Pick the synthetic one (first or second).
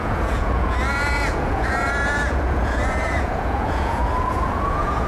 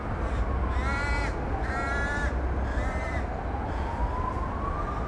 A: first